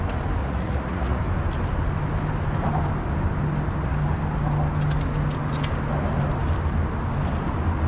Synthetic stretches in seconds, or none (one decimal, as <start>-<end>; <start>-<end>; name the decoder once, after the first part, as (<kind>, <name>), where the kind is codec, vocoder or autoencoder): 0.4-1.2 (vocoder, Vocos)